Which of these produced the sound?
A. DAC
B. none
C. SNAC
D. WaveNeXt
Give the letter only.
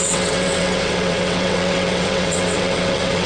D